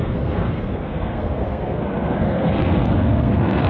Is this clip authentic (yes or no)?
no